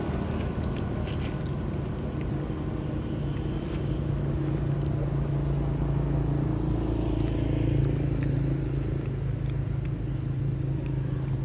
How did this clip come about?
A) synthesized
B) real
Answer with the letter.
B